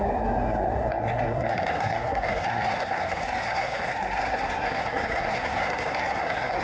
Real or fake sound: fake